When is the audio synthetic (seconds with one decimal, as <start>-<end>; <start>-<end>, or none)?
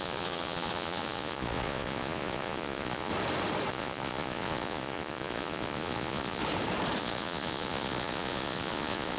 0.0-3.1; 3.7-6.4; 7.0-9.2